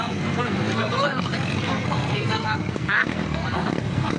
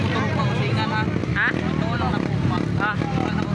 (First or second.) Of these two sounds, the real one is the second